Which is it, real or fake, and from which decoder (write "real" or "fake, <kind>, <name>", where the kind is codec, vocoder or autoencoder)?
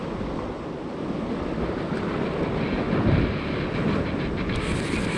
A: real